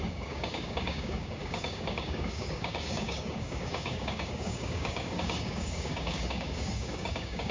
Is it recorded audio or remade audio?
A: remade